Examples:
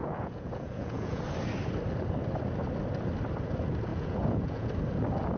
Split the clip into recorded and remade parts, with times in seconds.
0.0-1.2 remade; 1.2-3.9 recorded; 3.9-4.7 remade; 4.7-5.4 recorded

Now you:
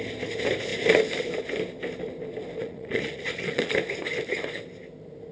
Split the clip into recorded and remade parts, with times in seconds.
0.0-2.6 recorded; 2.6-3.7 remade; 3.7-5.3 recorded

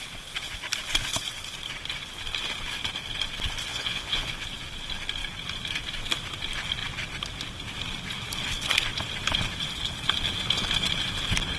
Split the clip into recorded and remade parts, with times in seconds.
0.0-3.7 recorded; 3.7-4.3 remade; 4.3-11.6 recorded

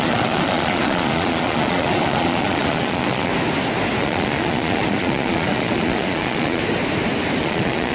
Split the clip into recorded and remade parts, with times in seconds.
0.0-3.3 remade; 3.3-4.0 recorded; 4.0-6.6 remade; 6.6-7.4 recorded; 7.4-7.9 remade

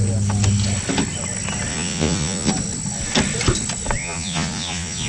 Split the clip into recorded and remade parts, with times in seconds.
0.0-1.7 recorded; 1.7-2.5 remade; 2.5-4.0 recorded; 4.0-5.1 remade

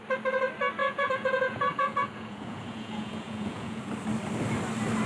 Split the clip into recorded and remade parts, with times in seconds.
0.0-0.8 recorded; 0.8-3.9 remade; 3.9-5.1 recorded

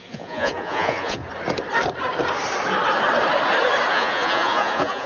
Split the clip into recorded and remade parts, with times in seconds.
0.0-1.2 remade; 1.2-3.9 recorded; 3.9-5.1 remade